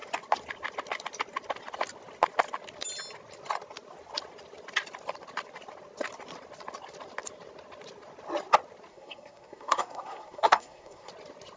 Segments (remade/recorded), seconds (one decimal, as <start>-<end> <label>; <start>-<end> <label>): 0.0-8.9 recorded; 8.9-11.1 remade; 11.1-11.6 recorded